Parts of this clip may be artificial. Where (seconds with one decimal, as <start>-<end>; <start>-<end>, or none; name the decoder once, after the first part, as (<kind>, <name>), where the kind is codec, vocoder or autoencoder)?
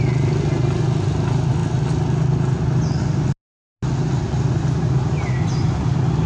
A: none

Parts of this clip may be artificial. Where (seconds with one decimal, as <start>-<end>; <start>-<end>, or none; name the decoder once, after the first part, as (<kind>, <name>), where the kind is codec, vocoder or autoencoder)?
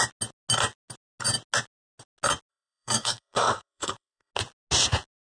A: 2.5-4.3 (codec, SNAC)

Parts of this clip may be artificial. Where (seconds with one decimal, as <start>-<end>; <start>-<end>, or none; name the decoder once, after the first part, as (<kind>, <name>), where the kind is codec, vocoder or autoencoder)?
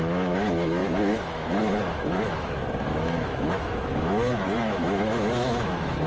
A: 0.0-6.1 (autoencoder, DAC-VAE)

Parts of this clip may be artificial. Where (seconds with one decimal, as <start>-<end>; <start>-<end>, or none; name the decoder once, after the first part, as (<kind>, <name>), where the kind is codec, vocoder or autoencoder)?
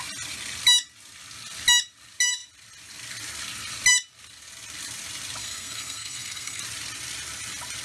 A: 5.4-6.6 (codec, SNAC)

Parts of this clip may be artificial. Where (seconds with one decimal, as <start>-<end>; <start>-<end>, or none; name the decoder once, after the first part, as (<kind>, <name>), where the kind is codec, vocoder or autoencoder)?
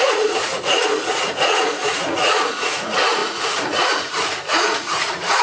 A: 0.0-5.4 (vocoder, Vocos)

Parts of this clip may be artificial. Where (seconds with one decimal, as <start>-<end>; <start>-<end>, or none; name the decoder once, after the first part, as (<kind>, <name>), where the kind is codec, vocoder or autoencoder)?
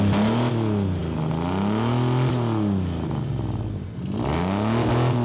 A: none